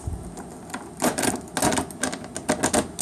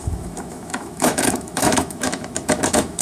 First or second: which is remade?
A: second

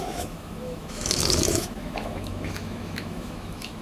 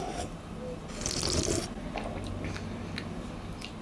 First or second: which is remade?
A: first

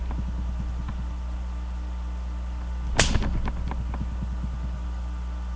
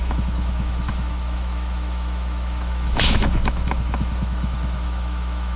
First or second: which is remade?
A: second